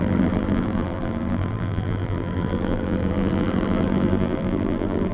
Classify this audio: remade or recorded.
remade